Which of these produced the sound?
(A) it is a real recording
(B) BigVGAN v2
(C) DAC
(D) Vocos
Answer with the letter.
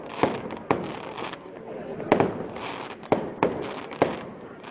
A